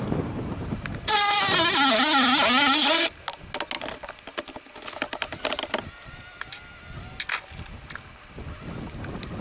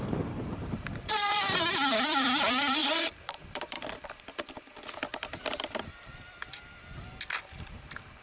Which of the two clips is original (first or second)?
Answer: first